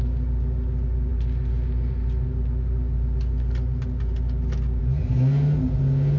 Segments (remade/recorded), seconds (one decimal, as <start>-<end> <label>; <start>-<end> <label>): 0.0-6.2 recorded